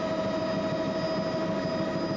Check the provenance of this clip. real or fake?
real